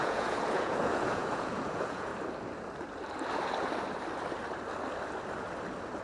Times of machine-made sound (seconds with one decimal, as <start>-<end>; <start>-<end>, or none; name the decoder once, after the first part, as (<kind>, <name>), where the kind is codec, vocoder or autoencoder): 0.0-2.1 (vocoder, Vocos)